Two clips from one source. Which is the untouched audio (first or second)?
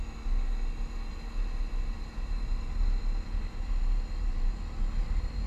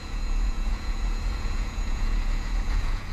first